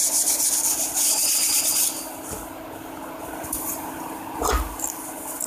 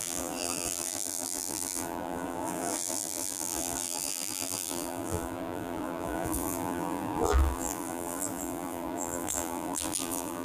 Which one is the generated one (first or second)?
second